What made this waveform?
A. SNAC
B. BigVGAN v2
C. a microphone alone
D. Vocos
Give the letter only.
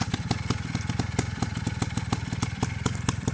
C